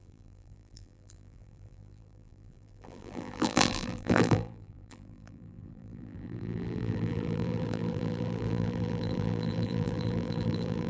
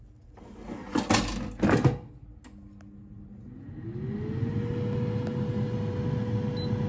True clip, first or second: second